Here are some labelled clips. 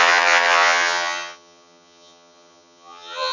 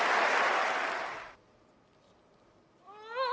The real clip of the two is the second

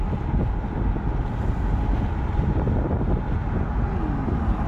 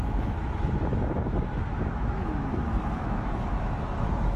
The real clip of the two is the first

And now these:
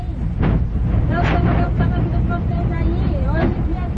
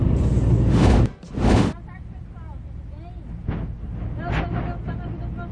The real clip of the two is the second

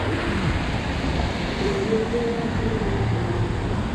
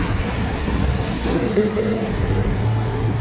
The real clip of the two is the first